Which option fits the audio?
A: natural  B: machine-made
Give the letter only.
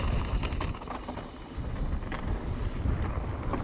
B